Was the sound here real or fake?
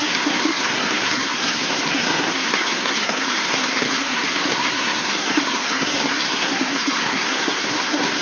fake